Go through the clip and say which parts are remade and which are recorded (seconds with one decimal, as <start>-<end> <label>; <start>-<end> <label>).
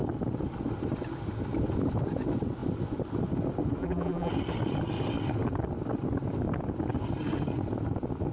0.0-3.8 recorded; 3.8-4.3 remade; 4.3-8.3 recorded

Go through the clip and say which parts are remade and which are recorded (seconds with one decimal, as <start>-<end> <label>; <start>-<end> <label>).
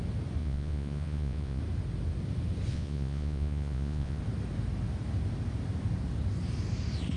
0.0-0.4 recorded; 0.4-1.6 remade; 1.6-2.7 recorded; 2.7-4.2 remade; 4.2-7.2 recorded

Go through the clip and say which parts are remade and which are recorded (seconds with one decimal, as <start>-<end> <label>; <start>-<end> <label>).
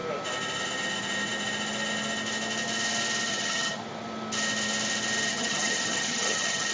0.0-3.3 recorded; 3.3-3.8 remade; 3.8-5.3 recorded; 5.3-6.7 remade